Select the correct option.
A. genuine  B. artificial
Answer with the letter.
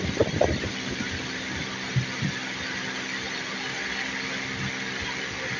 A